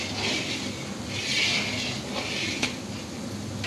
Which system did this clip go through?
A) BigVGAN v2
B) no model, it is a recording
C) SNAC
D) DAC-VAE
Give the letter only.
B